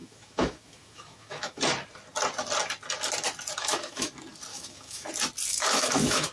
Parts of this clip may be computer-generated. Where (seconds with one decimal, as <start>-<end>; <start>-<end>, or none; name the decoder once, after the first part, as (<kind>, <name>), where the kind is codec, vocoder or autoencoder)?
0.0-1.6 (autoencoder, DAC-VAE); 3.6-4.1; 4.5-5.1; 5.5-6.3